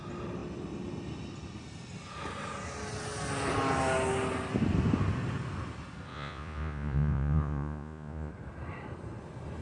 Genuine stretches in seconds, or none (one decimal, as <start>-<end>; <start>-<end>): 0.0-6.1; 8.3-9.6